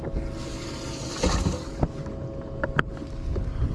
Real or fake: real